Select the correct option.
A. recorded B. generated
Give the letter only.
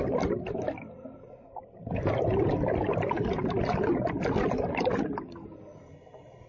A